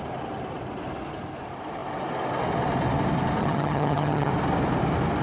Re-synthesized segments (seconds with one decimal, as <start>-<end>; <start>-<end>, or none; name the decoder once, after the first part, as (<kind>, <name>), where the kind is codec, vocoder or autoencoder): 3.4-4.3 (vocoder, HiFi-GAN)

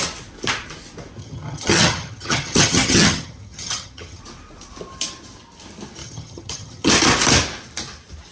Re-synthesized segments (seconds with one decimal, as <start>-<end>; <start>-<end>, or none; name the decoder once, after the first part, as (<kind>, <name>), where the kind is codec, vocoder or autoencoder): 1.2-4.2 (vocoder, HiFi-GAN); 6.0-6.9

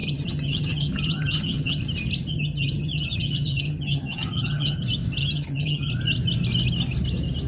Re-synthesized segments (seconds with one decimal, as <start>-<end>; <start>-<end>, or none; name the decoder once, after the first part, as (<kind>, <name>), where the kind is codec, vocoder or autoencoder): 0.0-1.8 (vocoder, HiFi-GAN); 2.3-4.8; 5.2-5.9

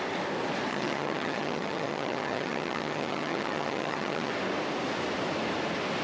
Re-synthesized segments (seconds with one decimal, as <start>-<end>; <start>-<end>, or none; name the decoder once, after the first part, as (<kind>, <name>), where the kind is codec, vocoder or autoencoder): 0.7-4.3 (vocoder, HiFi-GAN)

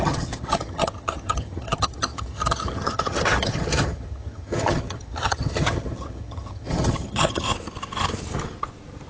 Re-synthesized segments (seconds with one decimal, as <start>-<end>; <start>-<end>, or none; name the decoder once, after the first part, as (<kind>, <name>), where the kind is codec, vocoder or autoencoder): 0.0-7.5 (vocoder, HiFi-GAN)

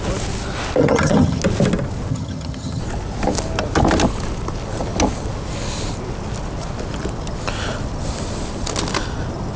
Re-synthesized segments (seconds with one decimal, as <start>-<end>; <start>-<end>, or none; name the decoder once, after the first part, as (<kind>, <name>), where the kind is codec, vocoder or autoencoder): 0.8-1.4 (vocoder, HiFi-GAN); 2.1-2.8

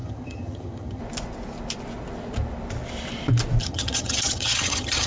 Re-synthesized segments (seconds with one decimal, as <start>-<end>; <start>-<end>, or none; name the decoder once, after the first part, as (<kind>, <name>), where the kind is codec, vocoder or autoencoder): 0.0-1.0 (vocoder, HiFi-GAN); 3.6-5.1

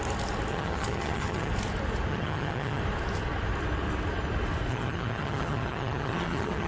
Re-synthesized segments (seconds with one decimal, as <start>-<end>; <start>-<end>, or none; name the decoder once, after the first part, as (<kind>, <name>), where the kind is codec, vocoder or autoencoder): 0.5-1.5 (vocoder, HiFi-GAN); 2.1-2.8; 4.7-6.7